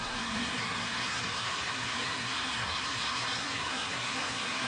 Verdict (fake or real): fake